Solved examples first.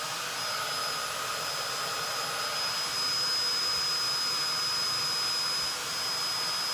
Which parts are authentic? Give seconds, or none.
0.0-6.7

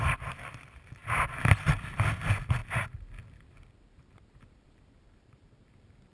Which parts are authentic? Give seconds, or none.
1.0-2.1; 2.6-4.5